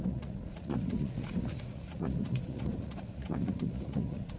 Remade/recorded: remade